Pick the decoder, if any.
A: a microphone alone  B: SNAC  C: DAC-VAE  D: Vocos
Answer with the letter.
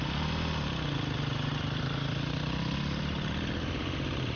A